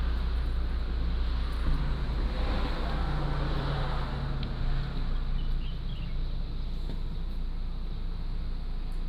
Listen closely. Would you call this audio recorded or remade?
recorded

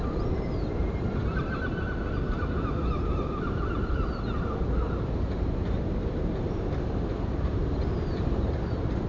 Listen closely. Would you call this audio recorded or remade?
remade